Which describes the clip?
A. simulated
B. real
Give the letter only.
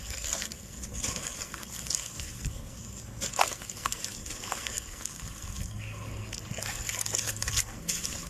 A